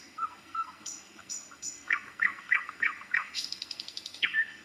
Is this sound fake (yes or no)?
yes